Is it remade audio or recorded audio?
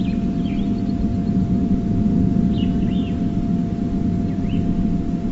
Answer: recorded